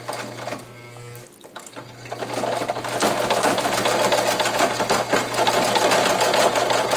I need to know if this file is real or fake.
real